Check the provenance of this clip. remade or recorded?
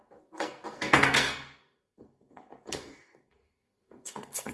remade